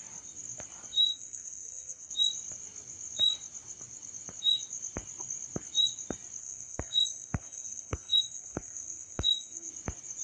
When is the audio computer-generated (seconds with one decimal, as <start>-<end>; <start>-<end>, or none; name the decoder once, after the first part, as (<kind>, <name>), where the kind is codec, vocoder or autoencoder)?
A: 1.1-2.1 (codec, SNAC); 6.4-9.7